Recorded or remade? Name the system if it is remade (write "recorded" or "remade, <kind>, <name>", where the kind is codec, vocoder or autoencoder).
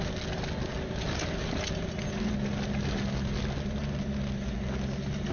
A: recorded